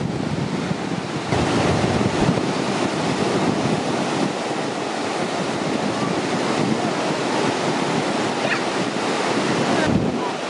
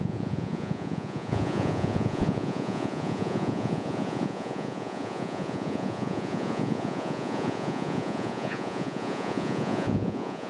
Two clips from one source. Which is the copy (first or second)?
second